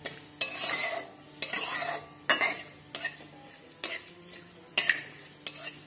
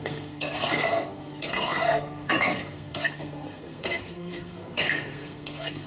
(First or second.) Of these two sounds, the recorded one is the first